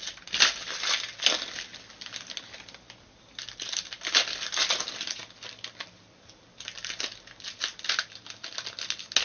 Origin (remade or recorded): recorded